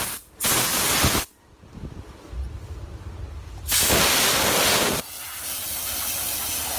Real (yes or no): no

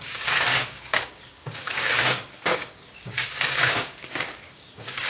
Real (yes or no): no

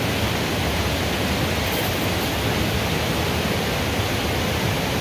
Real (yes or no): yes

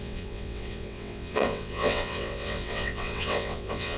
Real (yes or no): no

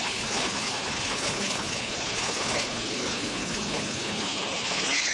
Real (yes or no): no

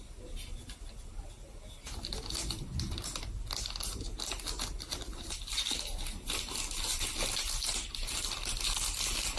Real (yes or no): yes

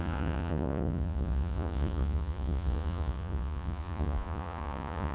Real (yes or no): no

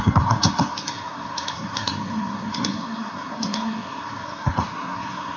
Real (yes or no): no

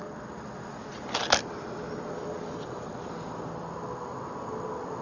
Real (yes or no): yes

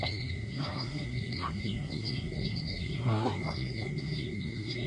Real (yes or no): no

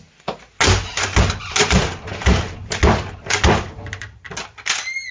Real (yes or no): yes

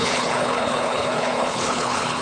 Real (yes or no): no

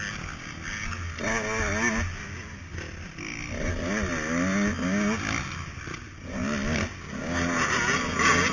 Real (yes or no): yes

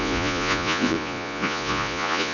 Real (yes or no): no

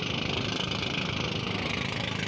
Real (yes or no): yes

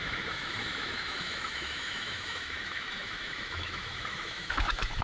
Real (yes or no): no